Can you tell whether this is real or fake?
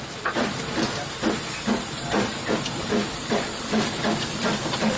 fake